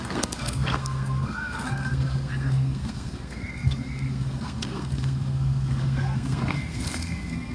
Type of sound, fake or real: fake